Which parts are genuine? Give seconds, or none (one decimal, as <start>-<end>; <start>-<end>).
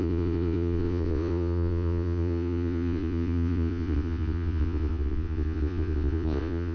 none